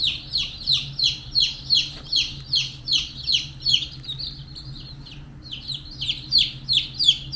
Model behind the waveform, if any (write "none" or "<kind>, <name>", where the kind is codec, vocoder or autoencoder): none